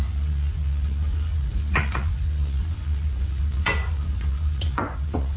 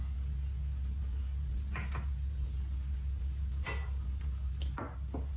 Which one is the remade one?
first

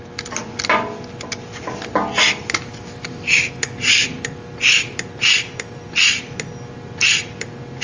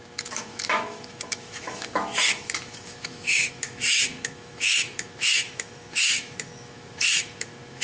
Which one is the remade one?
second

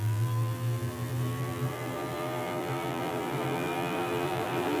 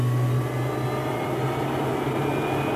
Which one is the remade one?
first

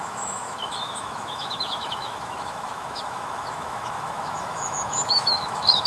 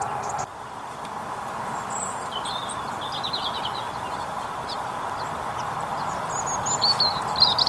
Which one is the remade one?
first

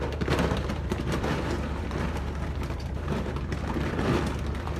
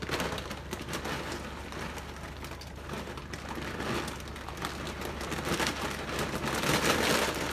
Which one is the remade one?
first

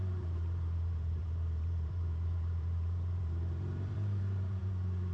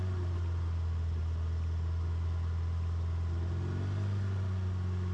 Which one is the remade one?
first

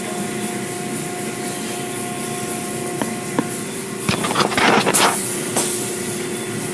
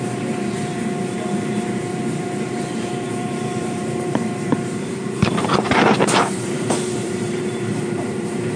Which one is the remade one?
second